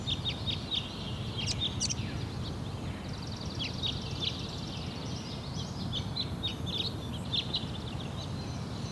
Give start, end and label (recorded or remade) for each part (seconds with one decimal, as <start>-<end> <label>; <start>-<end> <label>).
0.0-5.0 recorded; 5.0-5.6 remade; 5.6-6.5 recorded; 6.5-7.1 remade; 7.1-8.9 recorded